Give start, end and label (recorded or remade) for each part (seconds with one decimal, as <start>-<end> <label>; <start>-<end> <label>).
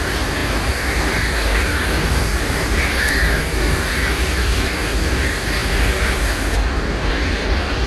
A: 0.0-7.9 remade